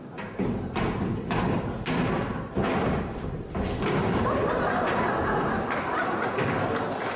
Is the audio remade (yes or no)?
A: yes